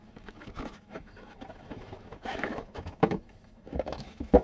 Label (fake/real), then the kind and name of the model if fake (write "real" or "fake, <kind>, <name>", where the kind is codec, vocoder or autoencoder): fake, autoencoder, DAC-VAE